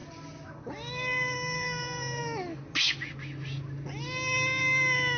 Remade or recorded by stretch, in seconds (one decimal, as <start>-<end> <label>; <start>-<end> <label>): 0.0-5.2 recorded